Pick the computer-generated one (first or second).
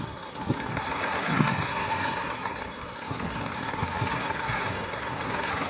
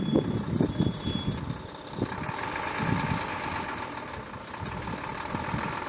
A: first